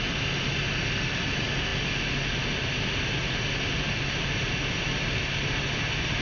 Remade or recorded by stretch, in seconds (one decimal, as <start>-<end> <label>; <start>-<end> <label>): 0.0-6.2 recorded